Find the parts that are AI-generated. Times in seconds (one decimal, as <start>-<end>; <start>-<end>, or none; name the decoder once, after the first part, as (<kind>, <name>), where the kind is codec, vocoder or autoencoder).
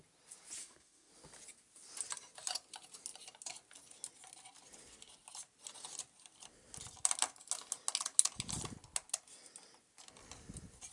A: 0.6-1.1 (autoencoder, DAC-VAE)